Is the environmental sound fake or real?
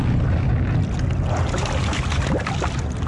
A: real